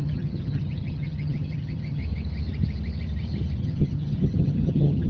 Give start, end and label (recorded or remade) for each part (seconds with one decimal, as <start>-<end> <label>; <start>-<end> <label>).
0.0-2.0 remade; 2.0-3.6 recorded; 3.6-5.1 remade